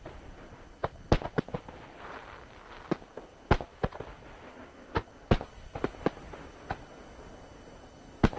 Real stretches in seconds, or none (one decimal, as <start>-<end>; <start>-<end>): 0.0-8.4